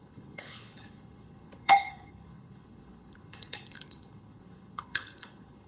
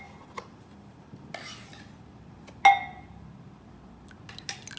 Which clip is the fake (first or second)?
first